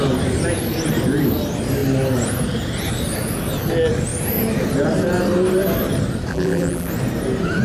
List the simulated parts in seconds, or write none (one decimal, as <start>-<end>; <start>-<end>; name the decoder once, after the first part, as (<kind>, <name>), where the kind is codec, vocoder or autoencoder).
6.3-6.9 (vocoder, BigVGAN v2)

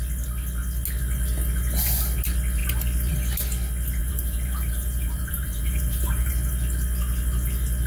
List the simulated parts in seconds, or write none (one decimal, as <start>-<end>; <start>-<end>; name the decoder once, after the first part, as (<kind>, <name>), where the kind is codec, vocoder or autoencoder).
4.0-6.3 (vocoder, BigVGAN v2)